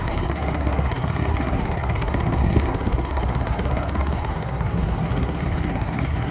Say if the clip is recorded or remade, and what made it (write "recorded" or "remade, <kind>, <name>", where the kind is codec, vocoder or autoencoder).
remade, codec, SNAC